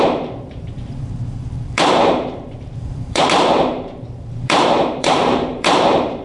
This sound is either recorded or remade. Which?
remade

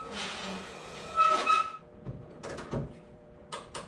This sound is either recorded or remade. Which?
remade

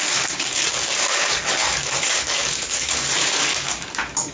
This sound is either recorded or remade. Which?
remade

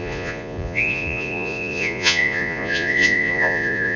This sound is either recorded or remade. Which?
remade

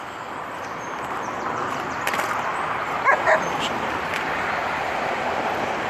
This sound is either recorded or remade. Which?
remade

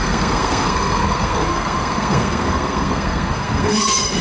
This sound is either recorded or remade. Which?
remade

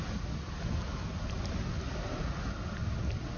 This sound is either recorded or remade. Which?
recorded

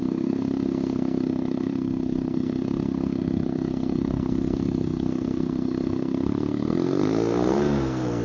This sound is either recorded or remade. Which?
remade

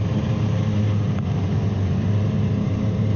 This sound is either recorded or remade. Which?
remade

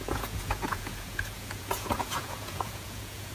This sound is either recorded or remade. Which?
remade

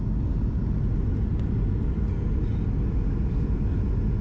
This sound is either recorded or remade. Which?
recorded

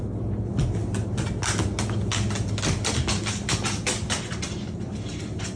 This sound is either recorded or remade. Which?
recorded